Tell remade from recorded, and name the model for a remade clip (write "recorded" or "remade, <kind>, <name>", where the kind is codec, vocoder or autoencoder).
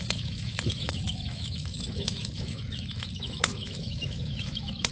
remade, autoencoder, DAC-VAE